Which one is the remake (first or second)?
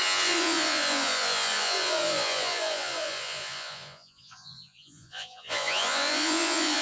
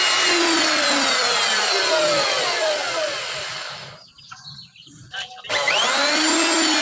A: first